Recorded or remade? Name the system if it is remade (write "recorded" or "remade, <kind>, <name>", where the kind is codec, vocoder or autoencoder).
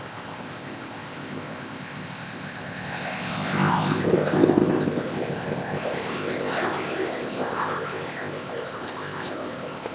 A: remade, codec, ZipCodec